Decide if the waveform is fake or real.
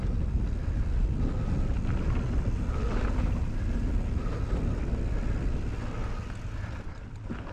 real